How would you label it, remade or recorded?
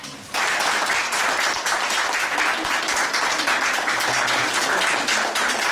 recorded